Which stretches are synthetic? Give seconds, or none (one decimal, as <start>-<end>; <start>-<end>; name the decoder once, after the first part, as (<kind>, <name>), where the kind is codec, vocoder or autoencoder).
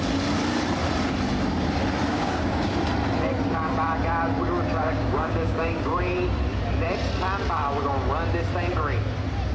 2.1-2.7 (codec, DAC); 4.8-6.0